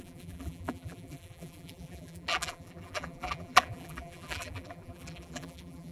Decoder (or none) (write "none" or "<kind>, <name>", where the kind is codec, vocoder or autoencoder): vocoder, BigVGAN v2